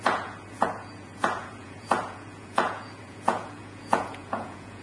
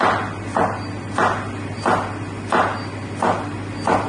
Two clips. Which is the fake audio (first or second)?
first